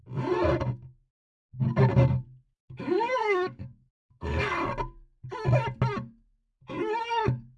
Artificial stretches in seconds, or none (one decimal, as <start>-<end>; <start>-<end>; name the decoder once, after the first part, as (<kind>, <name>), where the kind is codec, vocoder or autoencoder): 1.1-1.9 (codec, DAC); 2.6-4.5; 7.0-7.6